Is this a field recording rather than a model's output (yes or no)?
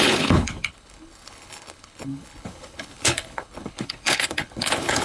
no